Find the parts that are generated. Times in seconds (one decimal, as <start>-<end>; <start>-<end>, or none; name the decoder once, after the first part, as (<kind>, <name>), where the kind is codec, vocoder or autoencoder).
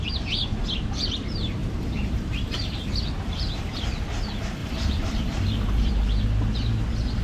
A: 1.6-3.6 (vocoder, BigVGAN v2); 4.6-5.9